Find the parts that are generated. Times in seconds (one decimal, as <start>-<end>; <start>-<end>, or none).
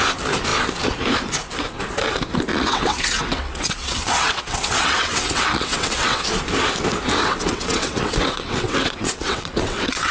2.5-6.2; 7.2-10.1